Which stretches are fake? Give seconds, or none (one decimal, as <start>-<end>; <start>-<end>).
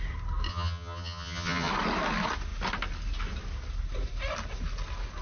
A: 0.5-1.7